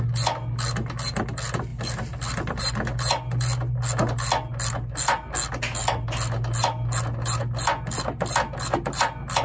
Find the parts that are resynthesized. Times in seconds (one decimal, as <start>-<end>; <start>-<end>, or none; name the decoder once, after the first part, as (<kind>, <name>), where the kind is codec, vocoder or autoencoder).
none